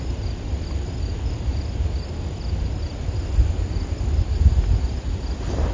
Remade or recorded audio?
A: recorded